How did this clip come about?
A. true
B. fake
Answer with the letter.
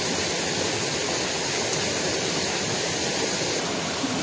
A